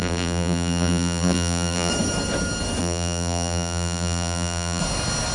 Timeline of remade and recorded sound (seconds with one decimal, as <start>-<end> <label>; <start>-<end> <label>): 0.0-1.9 remade; 1.9-2.8 recorded; 2.8-4.8 remade; 4.8-5.3 recorded